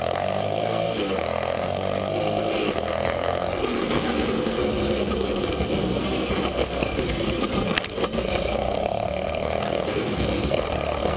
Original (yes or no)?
no